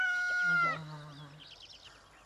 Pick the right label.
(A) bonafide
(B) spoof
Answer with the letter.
A